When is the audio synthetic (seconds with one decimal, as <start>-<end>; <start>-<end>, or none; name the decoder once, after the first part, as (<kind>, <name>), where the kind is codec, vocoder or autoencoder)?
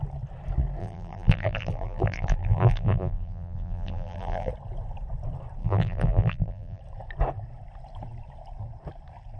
0.8-4.5 (vocoder, BigVGAN v2); 5.6-6.8